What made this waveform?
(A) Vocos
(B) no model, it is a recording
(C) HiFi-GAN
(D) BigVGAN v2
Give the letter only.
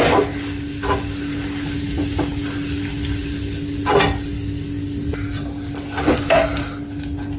B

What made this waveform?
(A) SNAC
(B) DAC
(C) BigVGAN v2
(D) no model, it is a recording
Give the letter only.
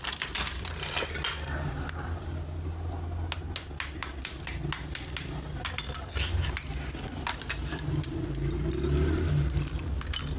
D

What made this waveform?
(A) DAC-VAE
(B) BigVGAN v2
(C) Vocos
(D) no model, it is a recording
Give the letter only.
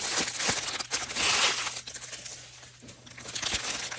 D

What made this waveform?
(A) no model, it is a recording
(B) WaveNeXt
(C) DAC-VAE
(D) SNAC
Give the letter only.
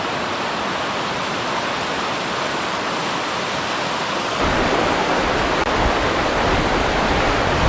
A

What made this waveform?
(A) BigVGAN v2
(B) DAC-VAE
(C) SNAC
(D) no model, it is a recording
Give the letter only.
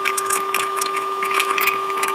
B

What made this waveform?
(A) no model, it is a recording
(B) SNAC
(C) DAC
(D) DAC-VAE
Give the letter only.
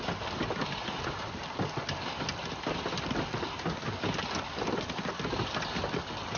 A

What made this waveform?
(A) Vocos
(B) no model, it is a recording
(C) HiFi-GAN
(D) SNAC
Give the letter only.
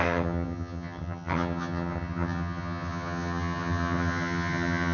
C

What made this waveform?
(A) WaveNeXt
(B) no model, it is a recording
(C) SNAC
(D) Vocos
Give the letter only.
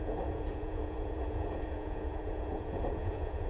D